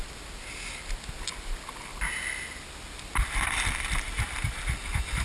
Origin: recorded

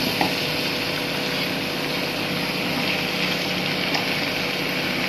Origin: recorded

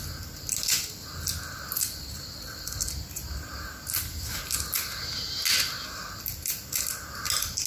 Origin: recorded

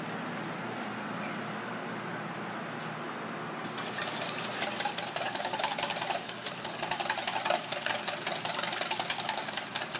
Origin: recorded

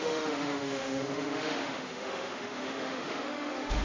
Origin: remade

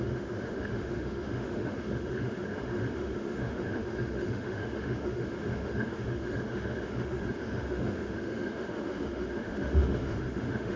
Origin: remade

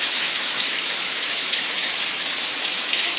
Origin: remade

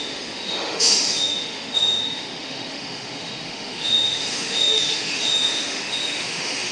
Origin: remade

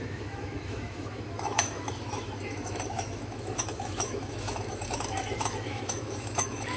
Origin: remade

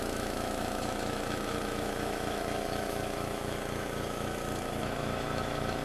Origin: remade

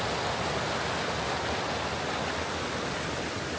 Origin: recorded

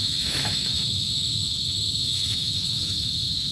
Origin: remade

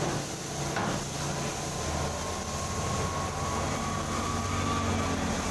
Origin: recorded